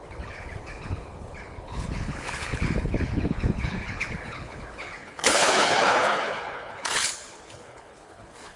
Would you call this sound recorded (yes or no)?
no